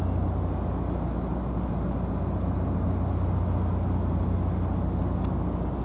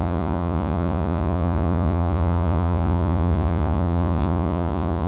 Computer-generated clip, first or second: second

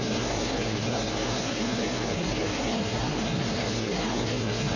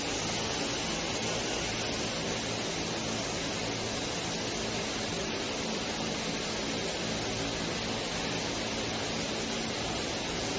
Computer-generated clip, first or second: first